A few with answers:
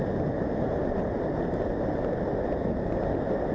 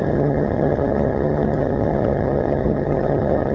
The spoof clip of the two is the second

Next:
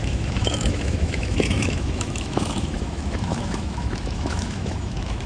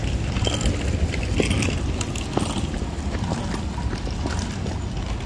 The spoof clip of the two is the first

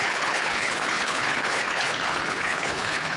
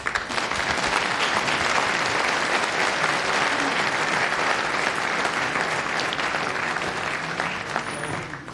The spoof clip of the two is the first